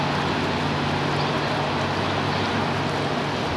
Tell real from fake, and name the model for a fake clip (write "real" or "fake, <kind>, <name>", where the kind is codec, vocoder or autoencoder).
real